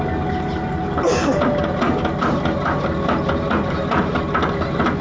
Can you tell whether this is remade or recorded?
recorded